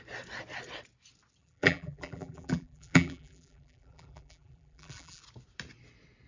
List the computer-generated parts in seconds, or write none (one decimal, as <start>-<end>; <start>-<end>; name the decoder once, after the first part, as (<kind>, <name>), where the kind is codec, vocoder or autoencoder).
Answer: 1.4-5.2 (vocoder, BigVGAN v2)